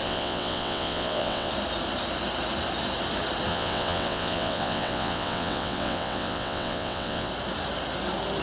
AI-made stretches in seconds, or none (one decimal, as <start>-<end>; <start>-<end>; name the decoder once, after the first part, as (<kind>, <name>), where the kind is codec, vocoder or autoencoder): 0.0-1.5 (vocoder, WaveNeXt); 3.5-7.3